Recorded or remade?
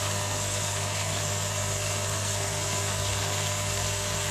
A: remade